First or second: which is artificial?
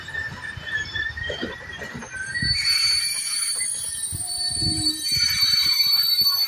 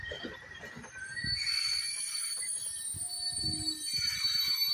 first